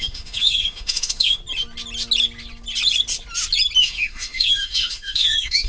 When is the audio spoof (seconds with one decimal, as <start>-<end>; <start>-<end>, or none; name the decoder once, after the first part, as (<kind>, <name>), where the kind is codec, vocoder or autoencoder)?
0.0-1.4 (autoencoder, DAC-VAE); 3.8-5.7